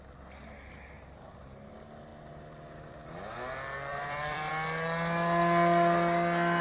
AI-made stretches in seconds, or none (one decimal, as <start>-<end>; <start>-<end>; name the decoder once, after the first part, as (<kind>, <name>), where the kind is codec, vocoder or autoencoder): 3.9-4.5 (vocoder, BigVGAN v2)